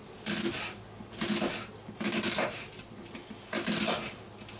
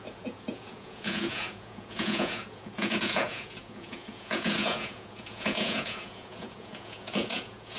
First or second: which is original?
first